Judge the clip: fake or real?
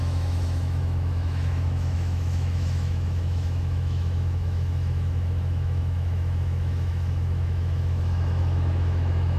fake